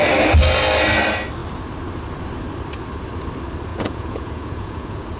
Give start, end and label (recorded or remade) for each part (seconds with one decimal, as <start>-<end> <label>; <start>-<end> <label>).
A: 0.0-3.7 recorded; 3.7-5.2 remade